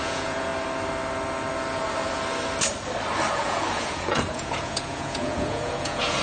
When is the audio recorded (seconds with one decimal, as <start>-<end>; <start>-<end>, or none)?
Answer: 0.5-3.3